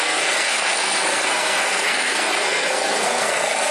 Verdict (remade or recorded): remade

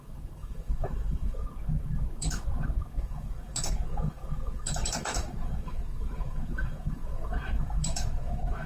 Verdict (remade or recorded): remade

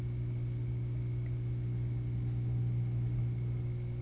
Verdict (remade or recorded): recorded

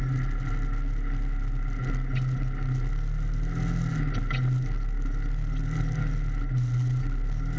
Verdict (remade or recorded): recorded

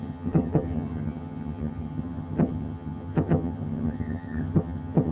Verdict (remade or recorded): remade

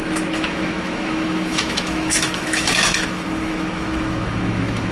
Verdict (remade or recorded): remade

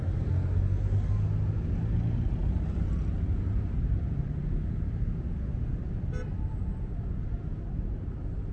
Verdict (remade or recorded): recorded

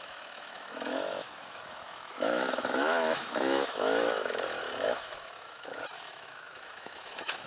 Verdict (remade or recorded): remade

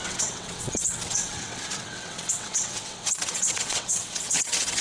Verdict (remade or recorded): remade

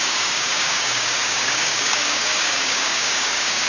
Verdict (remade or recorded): remade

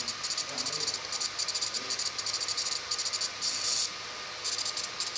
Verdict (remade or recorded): recorded